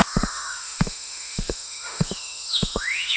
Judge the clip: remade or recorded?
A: remade